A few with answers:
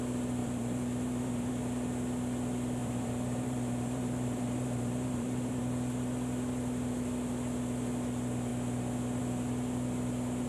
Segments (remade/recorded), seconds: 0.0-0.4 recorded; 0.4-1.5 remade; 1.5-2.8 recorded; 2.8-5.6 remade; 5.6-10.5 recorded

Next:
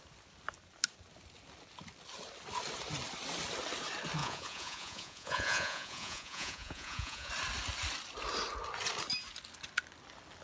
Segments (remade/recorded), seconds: 0.0-4.2 recorded; 4.2-7.3 remade; 7.3-10.4 recorded

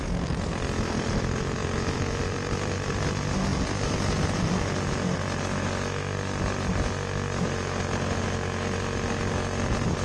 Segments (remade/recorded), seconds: 0.0-10.0 recorded